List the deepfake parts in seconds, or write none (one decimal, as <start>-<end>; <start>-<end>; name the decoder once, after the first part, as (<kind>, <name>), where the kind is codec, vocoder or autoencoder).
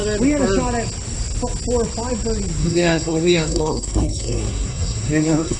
2.6-5.6 (codec, SNAC)